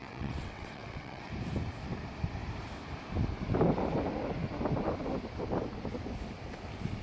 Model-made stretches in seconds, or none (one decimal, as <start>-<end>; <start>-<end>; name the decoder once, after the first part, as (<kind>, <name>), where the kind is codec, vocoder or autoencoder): 0.0-1.3 (vocoder, WaveNeXt)